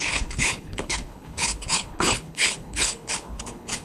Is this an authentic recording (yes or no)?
no